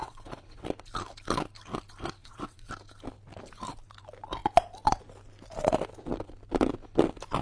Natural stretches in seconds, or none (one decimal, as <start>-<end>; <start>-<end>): 0.7-2.2; 2.7-7.4